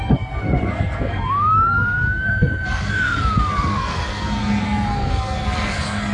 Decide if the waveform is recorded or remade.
remade